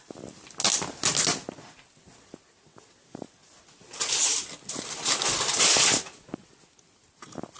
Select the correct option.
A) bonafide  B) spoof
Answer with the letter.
A